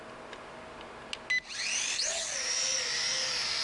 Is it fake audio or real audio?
real